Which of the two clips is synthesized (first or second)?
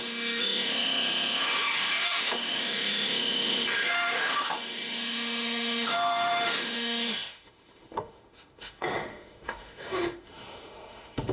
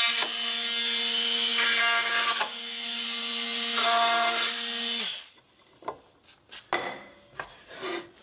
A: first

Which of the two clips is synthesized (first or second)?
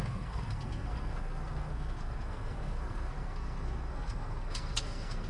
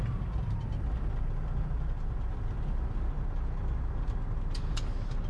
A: first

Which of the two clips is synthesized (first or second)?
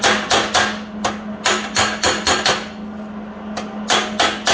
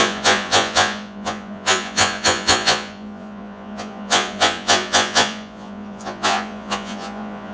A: second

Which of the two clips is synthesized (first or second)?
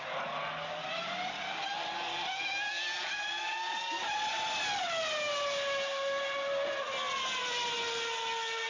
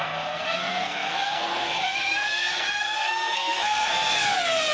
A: second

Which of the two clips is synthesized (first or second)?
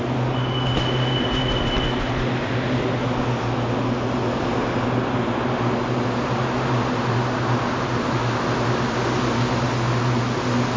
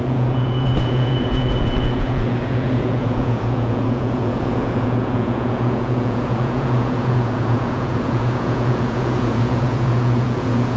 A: second